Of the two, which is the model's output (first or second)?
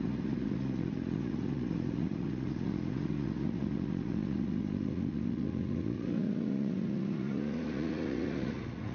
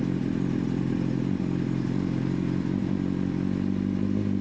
first